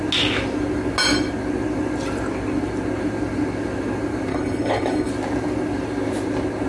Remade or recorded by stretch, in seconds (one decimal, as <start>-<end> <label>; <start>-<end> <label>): 0.0-4.3 recorded; 4.3-5.1 remade; 5.1-6.7 recorded